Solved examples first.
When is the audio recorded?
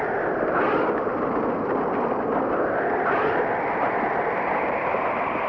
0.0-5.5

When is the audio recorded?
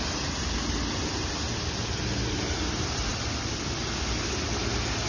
0.0-5.1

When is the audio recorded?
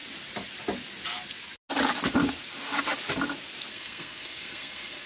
0.0-3.7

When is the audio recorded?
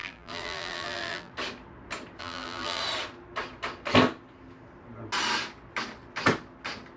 1.3-2.2; 2.8-7.0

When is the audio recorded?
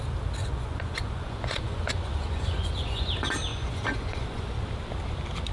0.0-0.4; 3.1-3.5; 4.5-5.5